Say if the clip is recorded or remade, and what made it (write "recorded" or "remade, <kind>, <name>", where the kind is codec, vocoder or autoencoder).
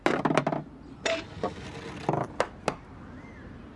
recorded